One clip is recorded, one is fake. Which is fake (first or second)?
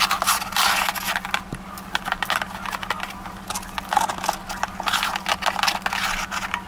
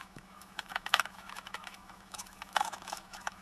second